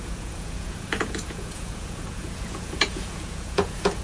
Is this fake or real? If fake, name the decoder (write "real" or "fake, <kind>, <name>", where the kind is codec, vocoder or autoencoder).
fake, vocoder, Vocos